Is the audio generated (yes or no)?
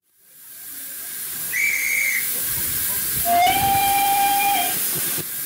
yes